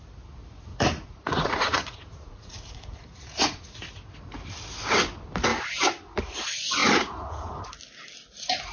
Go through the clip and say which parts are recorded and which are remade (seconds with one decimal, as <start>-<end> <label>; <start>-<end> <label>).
0.0-0.7 recorded; 0.7-3.8 remade; 3.8-6.8 recorded; 6.8-7.5 remade; 7.5-8.7 recorded